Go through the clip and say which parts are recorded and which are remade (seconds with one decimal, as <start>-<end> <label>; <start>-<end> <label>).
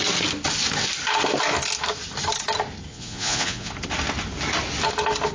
0.0-2.9 recorded; 2.9-3.7 remade; 3.7-5.3 recorded